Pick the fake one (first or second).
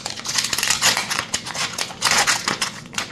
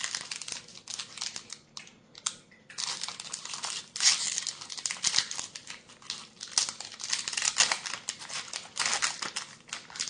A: first